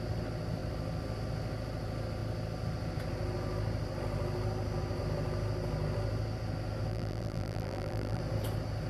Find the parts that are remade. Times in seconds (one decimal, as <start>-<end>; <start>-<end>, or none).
6.9-8.2